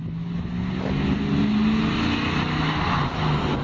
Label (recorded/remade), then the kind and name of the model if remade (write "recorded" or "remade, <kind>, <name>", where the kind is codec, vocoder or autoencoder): recorded